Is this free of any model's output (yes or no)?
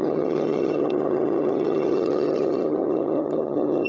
no